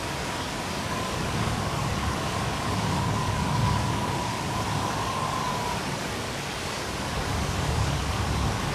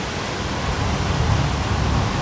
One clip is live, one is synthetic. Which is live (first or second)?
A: second